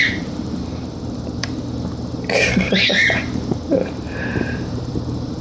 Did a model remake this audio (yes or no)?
yes